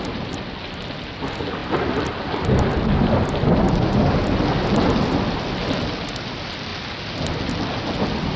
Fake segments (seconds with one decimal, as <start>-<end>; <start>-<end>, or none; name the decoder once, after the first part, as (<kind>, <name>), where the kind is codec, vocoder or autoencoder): none